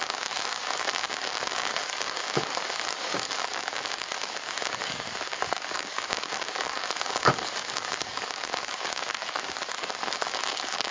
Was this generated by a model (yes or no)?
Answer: yes